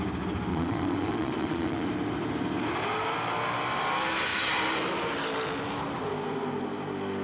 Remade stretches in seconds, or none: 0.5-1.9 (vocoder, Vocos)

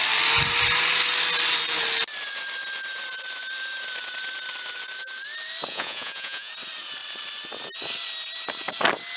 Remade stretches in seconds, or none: 5.7-6.5 (vocoder, Vocos)

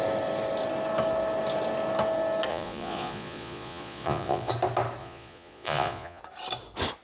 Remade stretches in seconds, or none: 2.5-4.5 (vocoder, Vocos); 5.0-6.2

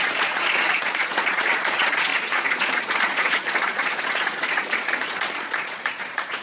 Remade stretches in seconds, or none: 0.0-6.4 (vocoder, Vocos)

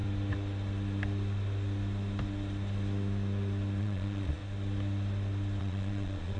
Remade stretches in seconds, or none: 3.8-4.4 (vocoder, Vocos); 5.6-6.4

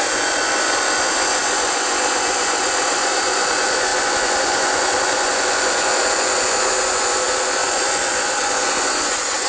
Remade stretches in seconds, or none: 0.0-9.5 (vocoder, Vocos)

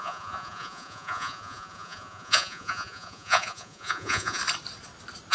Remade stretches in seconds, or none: 0.0-4.4 (vocoder, Vocos)

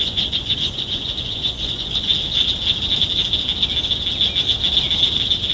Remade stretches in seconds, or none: 0.0-2.1 (vocoder, Vocos)